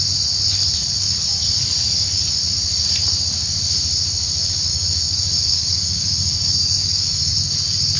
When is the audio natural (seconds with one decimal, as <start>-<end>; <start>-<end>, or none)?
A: 0.0-4.7; 7.3-8.0